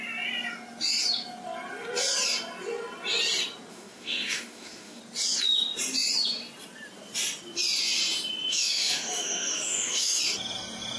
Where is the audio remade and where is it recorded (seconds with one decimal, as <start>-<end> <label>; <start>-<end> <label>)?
0.0-3.7 recorded; 3.7-5.0 remade; 5.0-8.5 recorded; 8.5-10.2 remade; 10.2-11.0 recorded